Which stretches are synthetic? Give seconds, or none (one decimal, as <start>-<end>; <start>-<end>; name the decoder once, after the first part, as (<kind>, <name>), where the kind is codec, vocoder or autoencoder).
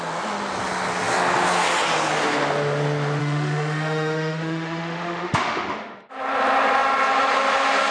3.2-6.1 (autoencoder, DAC-VAE)